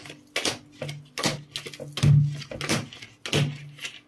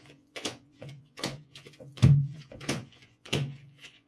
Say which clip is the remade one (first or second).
second